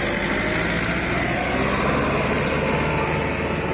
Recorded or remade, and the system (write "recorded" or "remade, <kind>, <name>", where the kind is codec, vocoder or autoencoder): recorded